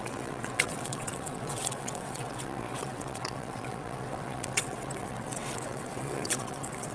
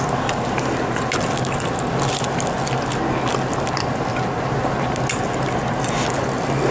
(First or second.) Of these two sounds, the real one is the second